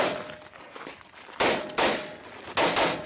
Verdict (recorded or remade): recorded